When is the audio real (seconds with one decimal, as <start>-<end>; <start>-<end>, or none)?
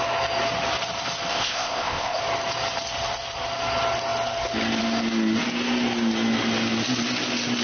0.0-1.3; 2.2-7.6